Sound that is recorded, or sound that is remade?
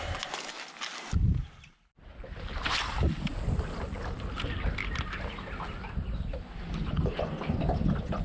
recorded